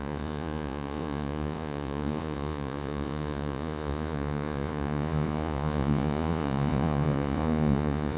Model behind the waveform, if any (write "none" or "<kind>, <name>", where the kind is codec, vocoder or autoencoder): vocoder, Vocos